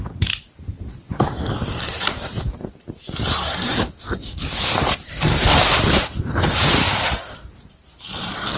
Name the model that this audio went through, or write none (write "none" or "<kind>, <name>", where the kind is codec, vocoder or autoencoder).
vocoder, BigVGAN v2